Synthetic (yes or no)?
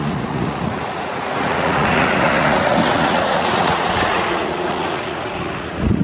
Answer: yes